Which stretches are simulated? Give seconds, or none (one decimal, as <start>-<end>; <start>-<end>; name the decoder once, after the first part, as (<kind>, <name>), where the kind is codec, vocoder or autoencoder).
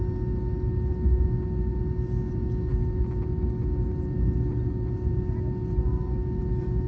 none